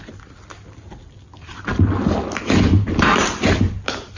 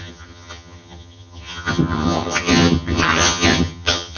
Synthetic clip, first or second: second